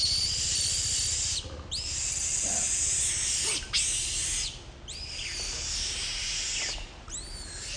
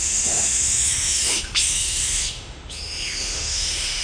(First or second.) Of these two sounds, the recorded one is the first